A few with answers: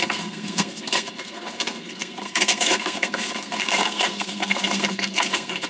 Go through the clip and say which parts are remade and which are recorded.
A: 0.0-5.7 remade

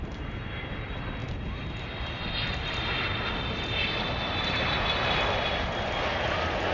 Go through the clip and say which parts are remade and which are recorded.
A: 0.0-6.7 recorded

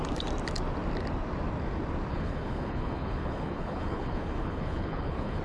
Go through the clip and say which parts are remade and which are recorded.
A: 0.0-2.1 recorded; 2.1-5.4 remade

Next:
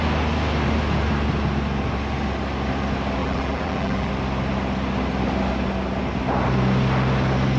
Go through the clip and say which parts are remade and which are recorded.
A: 0.0-3.2 recorded; 3.2-4.1 remade; 4.1-7.6 recorded

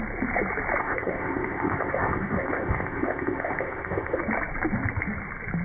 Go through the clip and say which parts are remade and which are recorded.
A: 0.0-0.8 recorded; 0.8-4.2 remade; 4.2-5.6 recorded

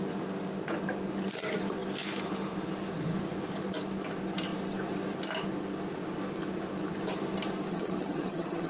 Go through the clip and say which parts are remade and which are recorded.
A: 0.0-7.7 recorded; 7.7-8.7 remade

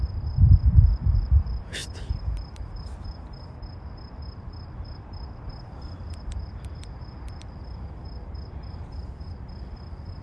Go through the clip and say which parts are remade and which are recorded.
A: 0.0-1.8 remade; 1.8-4.1 recorded; 4.1-10.2 remade